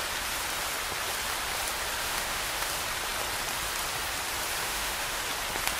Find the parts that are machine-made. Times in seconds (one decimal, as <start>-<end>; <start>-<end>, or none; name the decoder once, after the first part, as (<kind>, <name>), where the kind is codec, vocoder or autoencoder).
2.0-2.7 (autoencoder, DAC-VAE); 4.6-5.2